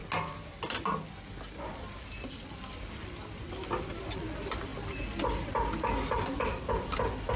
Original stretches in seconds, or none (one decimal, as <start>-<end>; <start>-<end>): 0.0-2.0